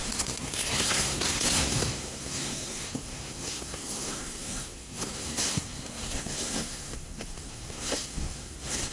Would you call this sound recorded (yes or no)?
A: no